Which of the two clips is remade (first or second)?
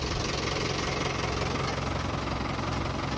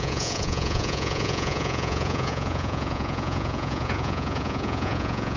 second